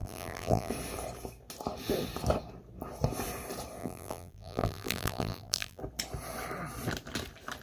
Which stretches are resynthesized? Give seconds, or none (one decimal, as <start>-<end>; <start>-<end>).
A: 0.0-0.7; 3.8-5.8